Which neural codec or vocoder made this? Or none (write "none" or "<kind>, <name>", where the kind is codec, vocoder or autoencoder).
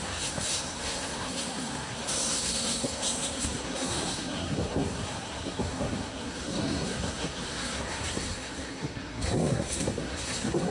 codec, SNAC